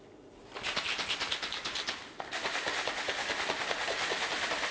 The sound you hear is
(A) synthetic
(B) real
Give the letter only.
B